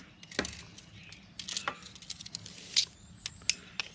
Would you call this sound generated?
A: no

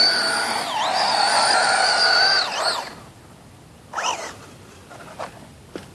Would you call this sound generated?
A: no